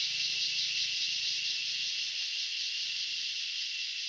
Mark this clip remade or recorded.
recorded